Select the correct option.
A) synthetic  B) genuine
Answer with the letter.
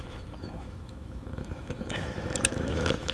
A